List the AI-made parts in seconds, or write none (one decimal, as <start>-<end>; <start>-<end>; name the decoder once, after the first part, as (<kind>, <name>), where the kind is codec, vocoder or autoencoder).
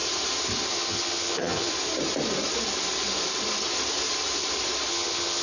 0.7-1.7 (vocoder, HiFi-GAN); 4.9-5.4